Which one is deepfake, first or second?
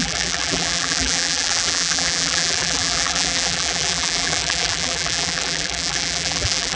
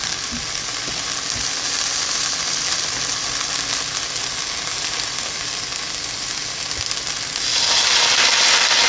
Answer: first